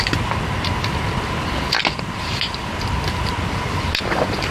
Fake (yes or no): no